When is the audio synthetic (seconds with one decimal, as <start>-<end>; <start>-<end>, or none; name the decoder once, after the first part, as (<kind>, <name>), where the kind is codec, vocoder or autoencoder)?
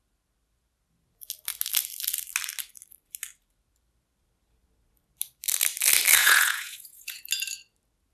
6.2-7.2 (vocoder, Vocos)